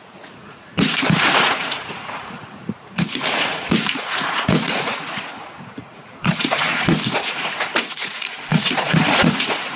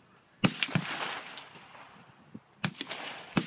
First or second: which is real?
second